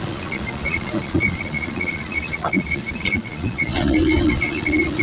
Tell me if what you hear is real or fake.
fake